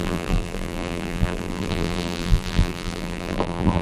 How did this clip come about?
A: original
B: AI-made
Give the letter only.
B